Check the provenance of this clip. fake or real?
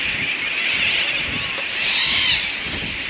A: real